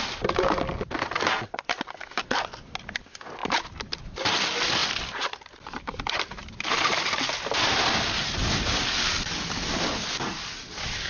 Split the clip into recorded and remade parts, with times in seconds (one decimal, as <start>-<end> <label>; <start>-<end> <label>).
0.0-3.4 recorded; 3.4-4.3 remade; 4.3-4.8 recorded; 4.8-8.1 remade; 8.1-11.1 recorded